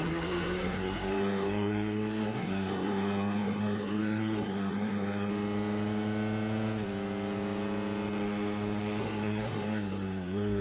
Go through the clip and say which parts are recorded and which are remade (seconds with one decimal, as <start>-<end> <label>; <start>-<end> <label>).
0.0-5.3 remade; 5.3-9.0 recorded; 9.0-10.6 remade